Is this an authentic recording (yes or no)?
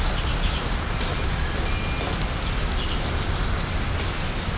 yes